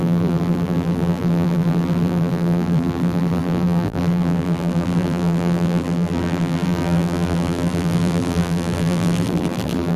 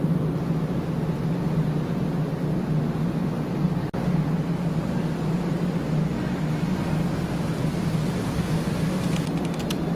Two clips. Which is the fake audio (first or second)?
first